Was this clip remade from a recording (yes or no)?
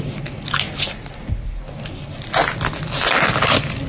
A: no